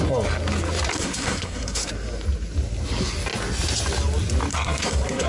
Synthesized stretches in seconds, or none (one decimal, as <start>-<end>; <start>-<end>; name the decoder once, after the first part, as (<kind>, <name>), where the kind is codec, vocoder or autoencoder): 0.9-1.9 (codec, SNAC); 4.5-5.3